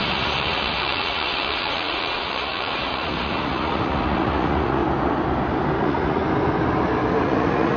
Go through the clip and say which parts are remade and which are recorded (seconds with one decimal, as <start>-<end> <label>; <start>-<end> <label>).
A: 0.0-4.8 remade; 4.8-5.8 recorded; 5.8-6.2 remade; 6.2-7.2 recorded; 7.2-7.8 remade